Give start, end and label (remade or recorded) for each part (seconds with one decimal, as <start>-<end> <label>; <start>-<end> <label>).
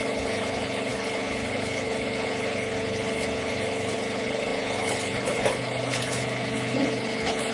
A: 0.0-7.5 remade